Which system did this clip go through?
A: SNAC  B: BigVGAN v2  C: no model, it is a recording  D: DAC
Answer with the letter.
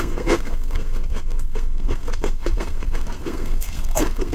A